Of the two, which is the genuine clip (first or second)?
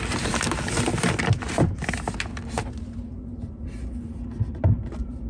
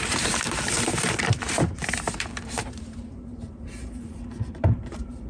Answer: first